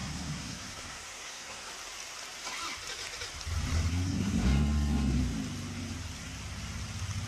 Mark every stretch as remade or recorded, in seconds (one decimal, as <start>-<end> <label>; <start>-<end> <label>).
0.0-1.7 remade; 1.7-3.9 recorded; 3.9-5.2 remade; 5.2-7.3 recorded